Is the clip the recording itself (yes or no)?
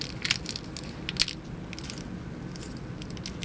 yes